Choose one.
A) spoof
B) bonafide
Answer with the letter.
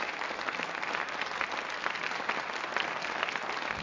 B